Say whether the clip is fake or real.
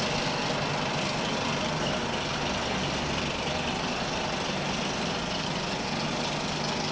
real